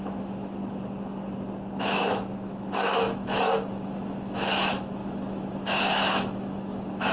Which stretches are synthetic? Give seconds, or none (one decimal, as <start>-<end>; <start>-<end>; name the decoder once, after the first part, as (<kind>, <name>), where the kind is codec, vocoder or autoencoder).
0.0-0.6 (autoencoder, DAC-VAE); 1.8-7.1